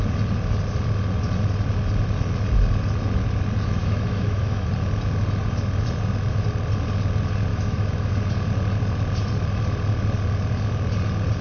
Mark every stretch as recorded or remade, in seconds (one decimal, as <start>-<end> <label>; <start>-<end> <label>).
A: 0.0-3.8 recorded; 3.8-4.7 remade; 4.7-7.5 recorded; 7.5-8.1 remade; 8.1-11.4 recorded